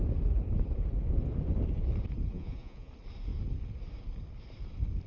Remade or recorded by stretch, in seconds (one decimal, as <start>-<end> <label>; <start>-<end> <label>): 0.0-2.3 recorded; 2.3-2.9 remade; 2.9-5.1 recorded